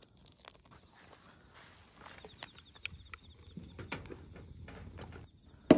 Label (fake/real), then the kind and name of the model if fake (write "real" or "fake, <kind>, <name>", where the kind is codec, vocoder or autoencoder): real